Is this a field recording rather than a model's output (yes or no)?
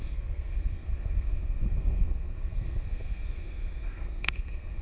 no